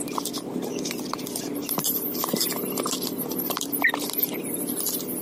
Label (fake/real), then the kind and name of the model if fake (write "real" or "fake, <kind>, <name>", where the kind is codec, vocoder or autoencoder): fake, vocoder, BigVGAN v2